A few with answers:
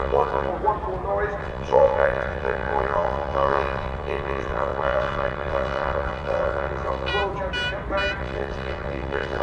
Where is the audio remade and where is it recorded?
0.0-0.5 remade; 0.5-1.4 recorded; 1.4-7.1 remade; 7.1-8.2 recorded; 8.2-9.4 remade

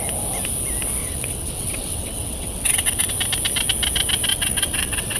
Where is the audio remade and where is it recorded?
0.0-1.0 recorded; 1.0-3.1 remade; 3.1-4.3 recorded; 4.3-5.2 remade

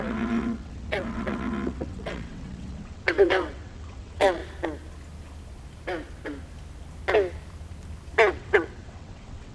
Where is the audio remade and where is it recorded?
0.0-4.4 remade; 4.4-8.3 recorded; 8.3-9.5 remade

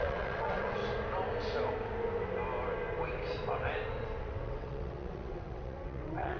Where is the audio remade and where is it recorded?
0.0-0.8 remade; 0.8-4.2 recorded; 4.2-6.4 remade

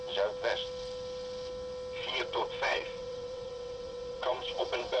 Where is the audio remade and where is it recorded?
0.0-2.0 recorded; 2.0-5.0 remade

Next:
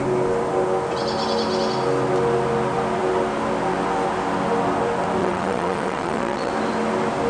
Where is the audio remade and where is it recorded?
0.0-5.2 recorded; 5.2-6.5 remade; 6.5-7.3 recorded

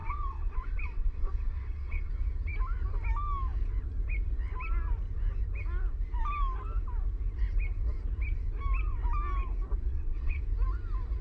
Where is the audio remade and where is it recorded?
0.0-2.1 remade; 2.1-9.9 recorded; 9.9-10.4 remade; 10.4-11.2 recorded